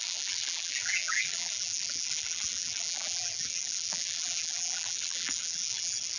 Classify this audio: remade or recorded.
remade